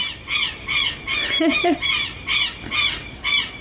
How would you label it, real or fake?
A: real